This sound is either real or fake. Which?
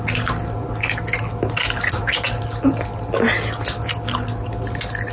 real